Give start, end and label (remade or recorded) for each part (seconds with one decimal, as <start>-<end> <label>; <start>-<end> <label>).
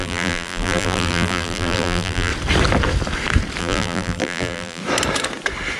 0.0-2.3 remade; 2.3-3.6 recorded; 3.6-4.8 remade; 4.8-5.8 recorded